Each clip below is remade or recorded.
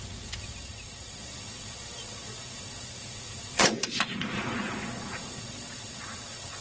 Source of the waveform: remade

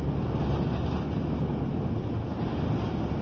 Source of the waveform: recorded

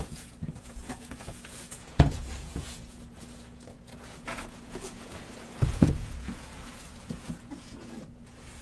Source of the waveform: remade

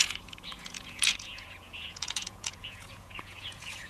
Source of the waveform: remade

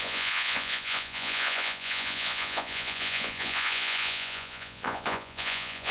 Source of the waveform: remade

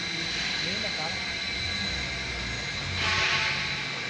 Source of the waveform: recorded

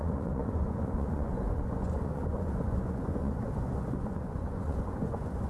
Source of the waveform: remade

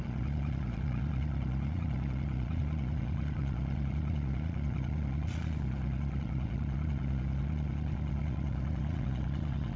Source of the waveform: remade